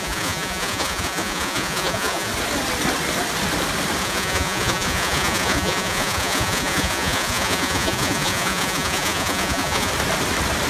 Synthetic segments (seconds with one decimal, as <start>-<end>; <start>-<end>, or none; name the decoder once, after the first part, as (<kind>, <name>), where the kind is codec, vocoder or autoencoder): 0.0-2.3 (vocoder, Vocos); 4.0-9.9